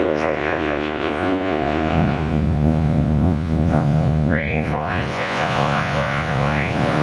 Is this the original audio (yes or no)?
no